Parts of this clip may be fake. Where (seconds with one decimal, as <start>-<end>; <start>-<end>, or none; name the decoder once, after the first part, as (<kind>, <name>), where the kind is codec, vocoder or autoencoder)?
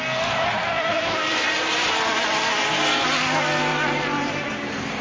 1.3-2.8 (vocoder, BigVGAN v2); 3.7-5.0